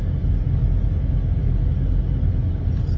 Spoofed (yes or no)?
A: no